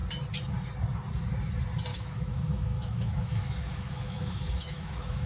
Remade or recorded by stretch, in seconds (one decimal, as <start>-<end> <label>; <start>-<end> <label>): 0.0-1.9 recorded; 1.9-5.3 remade